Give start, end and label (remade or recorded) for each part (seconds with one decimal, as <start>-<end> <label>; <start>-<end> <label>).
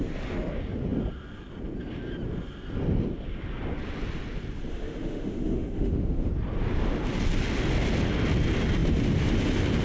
0.0-4.7 recorded; 4.7-6.3 remade; 6.3-9.8 recorded